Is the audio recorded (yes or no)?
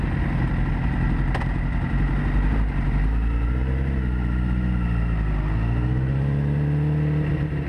yes